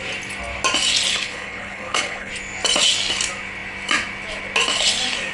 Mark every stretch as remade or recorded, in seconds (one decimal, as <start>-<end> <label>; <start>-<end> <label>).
0.0-1.1 recorded; 1.1-2.3 remade; 2.3-5.3 recorded